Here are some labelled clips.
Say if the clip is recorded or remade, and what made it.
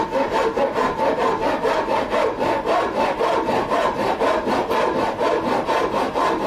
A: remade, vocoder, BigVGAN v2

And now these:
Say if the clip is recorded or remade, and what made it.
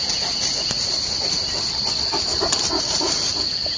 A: recorded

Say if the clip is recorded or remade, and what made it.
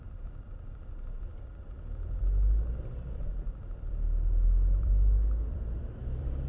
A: remade, vocoder, BigVGAN v2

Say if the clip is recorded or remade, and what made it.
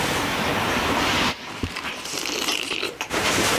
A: remade, vocoder, BigVGAN v2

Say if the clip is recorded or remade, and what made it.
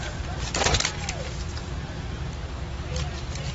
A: remade, vocoder, BigVGAN v2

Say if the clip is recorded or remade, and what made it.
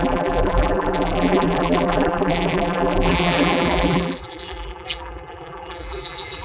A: remade, vocoder, BigVGAN v2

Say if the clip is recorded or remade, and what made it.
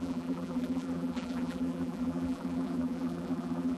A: remade, vocoder, BigVGAN v2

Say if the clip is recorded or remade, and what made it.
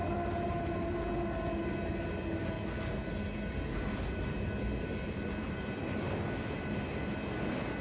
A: recorded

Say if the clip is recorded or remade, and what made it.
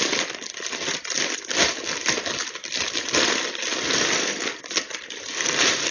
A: remade, vocoder, BigVGAN v2